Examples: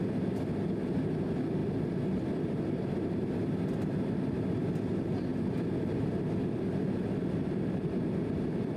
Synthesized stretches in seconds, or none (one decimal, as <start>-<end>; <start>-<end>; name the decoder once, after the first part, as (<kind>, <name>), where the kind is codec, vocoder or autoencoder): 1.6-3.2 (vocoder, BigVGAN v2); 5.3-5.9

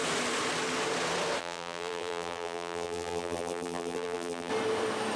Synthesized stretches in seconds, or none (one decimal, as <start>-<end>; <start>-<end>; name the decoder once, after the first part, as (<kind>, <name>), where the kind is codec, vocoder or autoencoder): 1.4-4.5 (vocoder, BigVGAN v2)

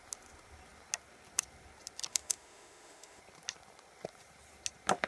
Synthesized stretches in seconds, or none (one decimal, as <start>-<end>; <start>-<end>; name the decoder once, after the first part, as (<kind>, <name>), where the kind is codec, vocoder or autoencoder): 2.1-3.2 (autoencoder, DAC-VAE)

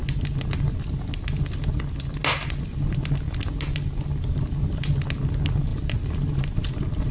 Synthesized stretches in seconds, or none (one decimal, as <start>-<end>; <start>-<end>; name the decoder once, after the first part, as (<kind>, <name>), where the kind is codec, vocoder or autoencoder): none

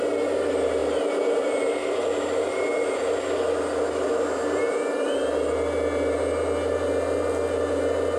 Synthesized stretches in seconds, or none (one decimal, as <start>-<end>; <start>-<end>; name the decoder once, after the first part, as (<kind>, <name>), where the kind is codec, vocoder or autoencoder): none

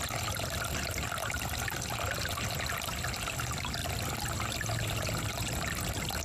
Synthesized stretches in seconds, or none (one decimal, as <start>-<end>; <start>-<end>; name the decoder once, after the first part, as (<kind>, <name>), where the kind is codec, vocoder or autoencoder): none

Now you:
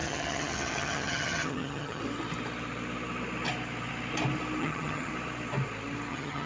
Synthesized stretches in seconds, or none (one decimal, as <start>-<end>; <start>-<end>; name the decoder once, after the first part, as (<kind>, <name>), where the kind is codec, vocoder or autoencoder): 0.0-2.0 (vocoder, HiFi-GAN); 4.6-5.1; 6.1-6.5

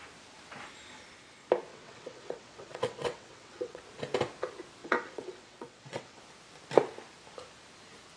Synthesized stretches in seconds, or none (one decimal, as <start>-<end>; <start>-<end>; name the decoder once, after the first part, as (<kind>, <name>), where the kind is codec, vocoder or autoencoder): 1.7-3.8 (vocoder, WaveNeXt); 4.8-6.2